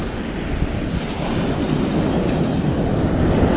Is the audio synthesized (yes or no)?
no